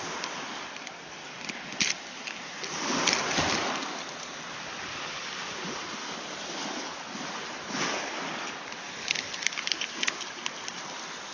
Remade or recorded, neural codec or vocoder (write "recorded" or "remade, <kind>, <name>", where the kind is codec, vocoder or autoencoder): recorded